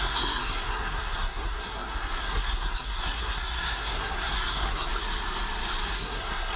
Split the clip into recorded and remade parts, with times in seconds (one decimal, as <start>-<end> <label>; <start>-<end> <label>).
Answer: 0.0-4.9 remade; 4.9-5.9 recorded; 5.9-6.6 remade